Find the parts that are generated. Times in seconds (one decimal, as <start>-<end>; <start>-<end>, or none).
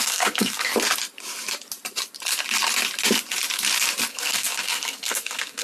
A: 0.0-0.7; 4.1-5.6